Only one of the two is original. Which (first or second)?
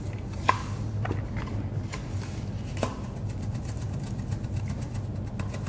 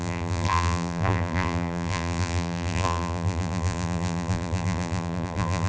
first